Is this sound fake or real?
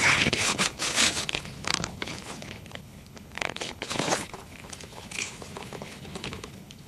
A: fake